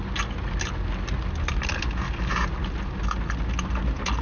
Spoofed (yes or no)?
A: no